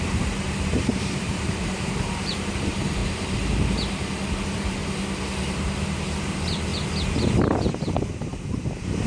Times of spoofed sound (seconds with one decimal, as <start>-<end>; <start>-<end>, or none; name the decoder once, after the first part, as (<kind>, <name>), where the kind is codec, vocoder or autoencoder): 0.0-3.0 (vocoder, BigVGAN v2); 4.3-4.8; 5.4-6.7; 7.9-9.1